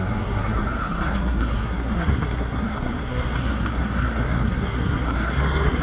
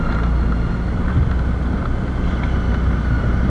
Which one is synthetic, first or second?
first